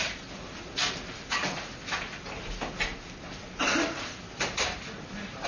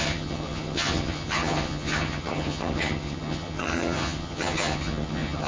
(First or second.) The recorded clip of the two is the first